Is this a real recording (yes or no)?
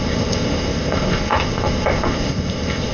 no